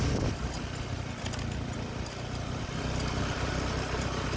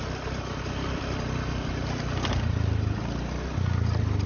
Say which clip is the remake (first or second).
first